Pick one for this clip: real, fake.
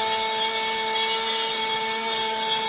real